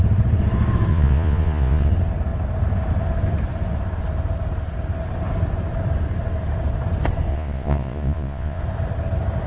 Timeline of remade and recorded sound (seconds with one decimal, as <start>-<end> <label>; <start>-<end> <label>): 0.0-0.9 recorded; 0.9-1.9 remade; 1.9-7.3 recorded; 7.3-8.6 remade; 8.6-9.5 recorded